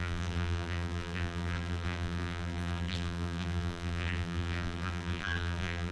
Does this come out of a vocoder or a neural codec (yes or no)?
yes